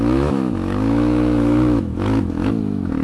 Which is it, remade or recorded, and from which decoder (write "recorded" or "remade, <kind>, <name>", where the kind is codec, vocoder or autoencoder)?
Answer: remade, autoencoder, DAC-VAE